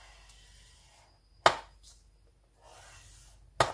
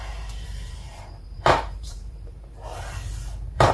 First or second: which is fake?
second